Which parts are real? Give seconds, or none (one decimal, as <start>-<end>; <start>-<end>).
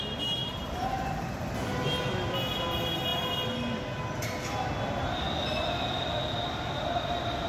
0.0-0.4; 1.3-7.5